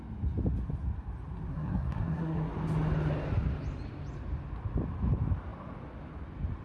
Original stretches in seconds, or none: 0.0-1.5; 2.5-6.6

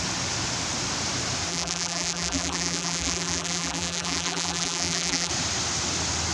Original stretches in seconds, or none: 0.0-1.5; 5.3-6.3

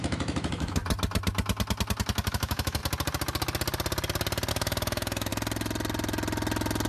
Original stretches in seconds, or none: 0.8-2.3; 2.8-4.5; 5.3-6.9

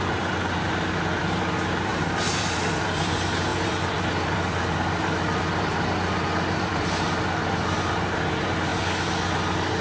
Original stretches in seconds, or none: 1.9-2.4; 8.7-9.8

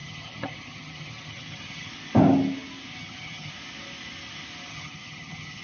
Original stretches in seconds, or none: 1.9-2.9; 3.5-4.7

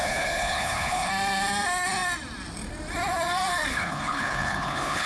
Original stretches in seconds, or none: 1.1-3.7

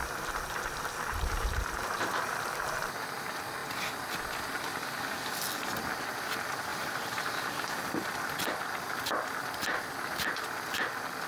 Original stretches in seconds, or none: 2.4-6.7; 7.8-11.3

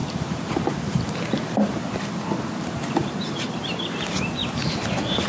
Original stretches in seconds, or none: 3.2-5.3